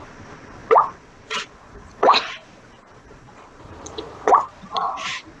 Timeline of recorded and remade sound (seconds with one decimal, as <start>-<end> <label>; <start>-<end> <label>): 0.0-5.4 remade